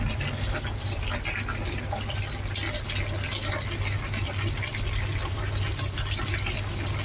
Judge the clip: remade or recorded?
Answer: recorded